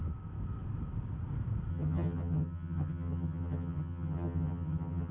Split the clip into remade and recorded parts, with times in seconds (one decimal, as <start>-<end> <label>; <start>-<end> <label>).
0.0-1.7 recorded; 1.7-5.1 remade